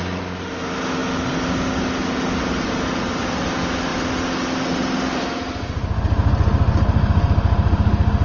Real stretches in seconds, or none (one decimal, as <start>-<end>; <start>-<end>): 0.0-8.2